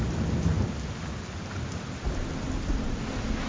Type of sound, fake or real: real